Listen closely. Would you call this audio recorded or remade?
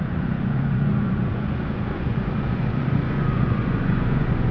remade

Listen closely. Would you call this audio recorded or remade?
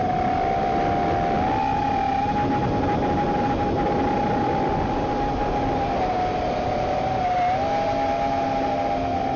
recorded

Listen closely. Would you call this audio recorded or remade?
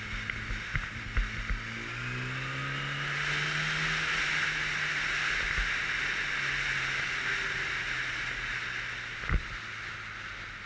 recorded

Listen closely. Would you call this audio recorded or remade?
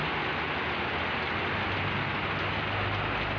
recorded